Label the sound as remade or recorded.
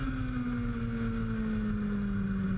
recorded